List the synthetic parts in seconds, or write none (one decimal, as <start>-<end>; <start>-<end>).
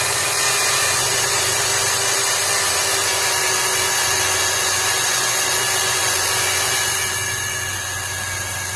0.0-1.7; 3.0-8.8